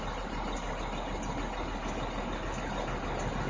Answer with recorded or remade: recorded